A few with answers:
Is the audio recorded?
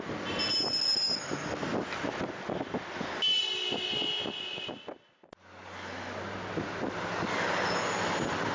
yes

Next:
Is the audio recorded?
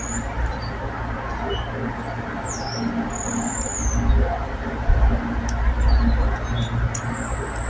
yes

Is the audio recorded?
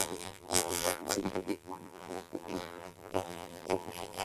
no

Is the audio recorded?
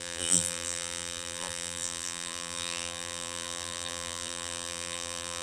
no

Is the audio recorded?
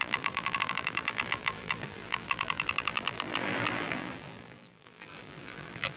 no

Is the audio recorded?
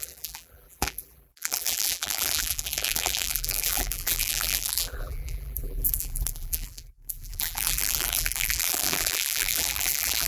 no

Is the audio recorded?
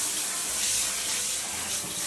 yes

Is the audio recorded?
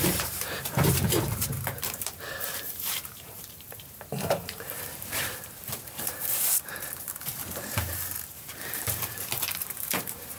no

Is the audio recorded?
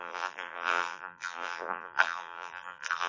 no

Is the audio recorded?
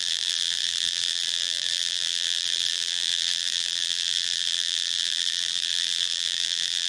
no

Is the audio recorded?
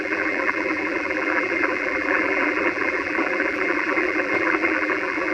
no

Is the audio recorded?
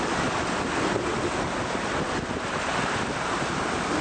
yes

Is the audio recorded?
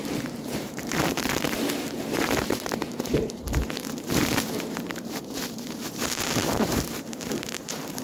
no